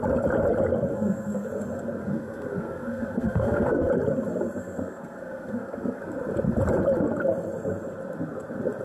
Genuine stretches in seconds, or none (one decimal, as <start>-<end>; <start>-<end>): 0.0-0.9; 1.5-2.0; 3.9-4.6; 6.0-8.8